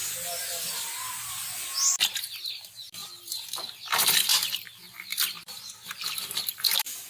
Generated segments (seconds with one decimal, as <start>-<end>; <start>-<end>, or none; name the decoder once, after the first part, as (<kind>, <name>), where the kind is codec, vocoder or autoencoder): 3.0-6.6 (vocoder, BigVGAN v2)